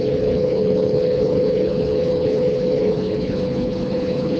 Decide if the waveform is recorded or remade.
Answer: remade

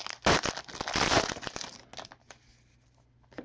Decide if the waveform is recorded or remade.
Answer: recorded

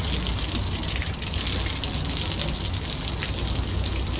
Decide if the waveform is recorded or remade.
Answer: recorded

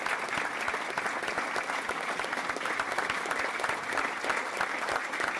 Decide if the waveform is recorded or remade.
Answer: recorded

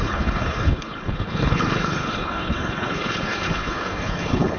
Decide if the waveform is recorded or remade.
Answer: remade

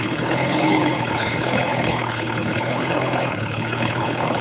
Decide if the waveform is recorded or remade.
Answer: remade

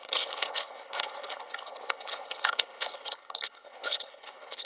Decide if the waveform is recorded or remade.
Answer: remade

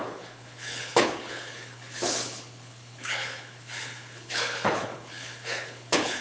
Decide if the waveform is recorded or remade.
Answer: remade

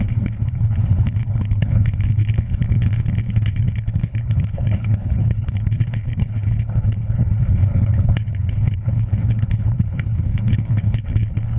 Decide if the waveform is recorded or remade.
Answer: remade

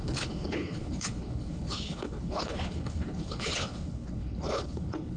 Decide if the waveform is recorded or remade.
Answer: remade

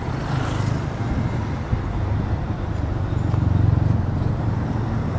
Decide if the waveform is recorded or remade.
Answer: recorded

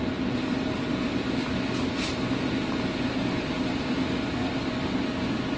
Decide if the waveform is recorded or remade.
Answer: recorded